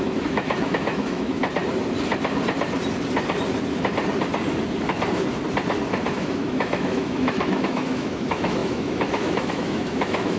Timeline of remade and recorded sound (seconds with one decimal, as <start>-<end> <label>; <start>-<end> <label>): 0.0-1.4 remade; 1.4-6.1 recorded; 6.1-10.4 remade